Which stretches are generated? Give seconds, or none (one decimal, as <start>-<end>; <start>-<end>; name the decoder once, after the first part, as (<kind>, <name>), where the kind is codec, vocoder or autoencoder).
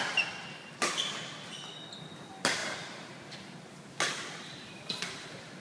none